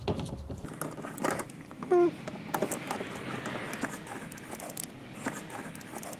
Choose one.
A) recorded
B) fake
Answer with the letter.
A